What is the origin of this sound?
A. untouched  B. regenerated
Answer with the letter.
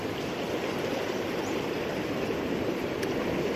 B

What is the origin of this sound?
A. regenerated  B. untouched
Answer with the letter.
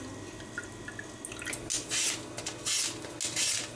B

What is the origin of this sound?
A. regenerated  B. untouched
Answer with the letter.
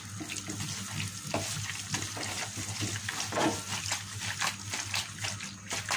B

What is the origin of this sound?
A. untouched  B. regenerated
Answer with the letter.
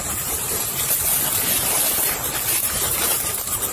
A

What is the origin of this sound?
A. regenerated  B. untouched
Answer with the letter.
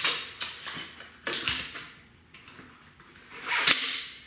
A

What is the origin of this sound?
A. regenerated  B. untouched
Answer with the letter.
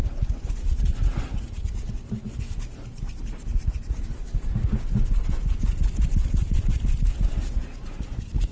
B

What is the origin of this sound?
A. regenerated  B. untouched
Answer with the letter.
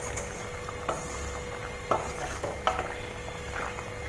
B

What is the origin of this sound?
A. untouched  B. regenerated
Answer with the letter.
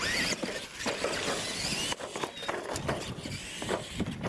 A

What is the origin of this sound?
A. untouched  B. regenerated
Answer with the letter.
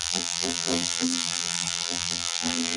B